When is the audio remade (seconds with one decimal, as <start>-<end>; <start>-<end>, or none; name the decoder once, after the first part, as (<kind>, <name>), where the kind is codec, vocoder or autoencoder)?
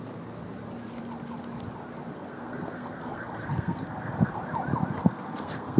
2.1-4.4 (codec, SNAC); 5.0-5.8